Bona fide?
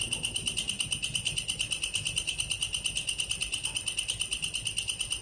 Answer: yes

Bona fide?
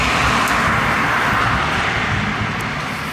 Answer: yes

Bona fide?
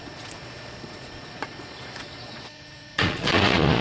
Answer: no